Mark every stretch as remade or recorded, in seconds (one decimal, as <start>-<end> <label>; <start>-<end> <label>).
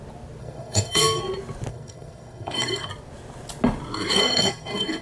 0.0-0.4 recorded; 0.4-1.2 remade; 1.2-1.7 recorded; 1.7-2.9 remade; 2.9-4.2 recorded; 4.2-5.0 remade